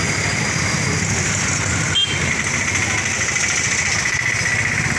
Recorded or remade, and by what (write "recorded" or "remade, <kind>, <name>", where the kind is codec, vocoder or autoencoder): recorded